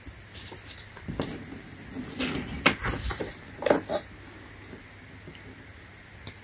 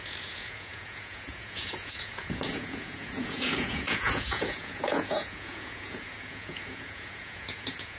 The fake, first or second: second